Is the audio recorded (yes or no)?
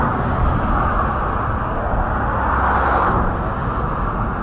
yes